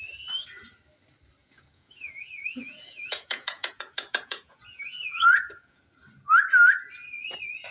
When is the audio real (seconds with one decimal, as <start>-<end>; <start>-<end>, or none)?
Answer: 0.0-1.4; 5.8-7.7